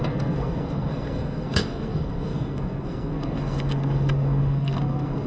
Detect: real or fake fake